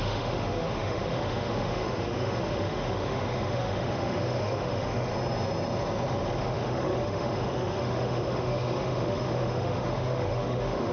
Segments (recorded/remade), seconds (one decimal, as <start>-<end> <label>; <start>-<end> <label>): 0.0-5.1 remade; 5.1-6.4 recorded; 6.4-10.9 remade